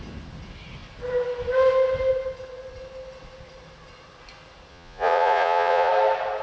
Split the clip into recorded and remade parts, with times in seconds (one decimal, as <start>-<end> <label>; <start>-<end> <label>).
0.0-4.7 recorded; 4.7-5.9 remade; 5.9-6.4 recorded